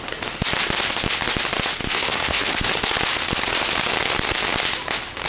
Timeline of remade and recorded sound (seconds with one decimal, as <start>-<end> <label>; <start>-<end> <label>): 0.0-1.8 recorded; 1.8-2.7 remade; 2.7-5.3 recorded